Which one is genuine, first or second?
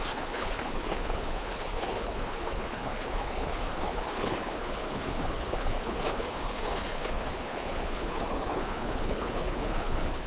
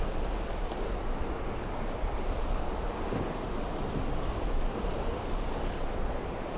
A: second